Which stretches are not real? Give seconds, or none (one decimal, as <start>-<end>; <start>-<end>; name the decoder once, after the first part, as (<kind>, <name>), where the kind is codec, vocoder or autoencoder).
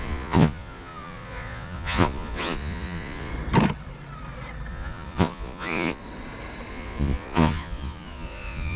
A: 0.0-3.3 (vocoder, Vocos); 4.7-6.0; 6.7-8.8